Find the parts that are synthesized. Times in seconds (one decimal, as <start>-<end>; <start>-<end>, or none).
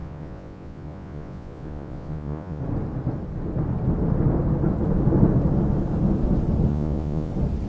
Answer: 0.0-2.6; 6.7-7.3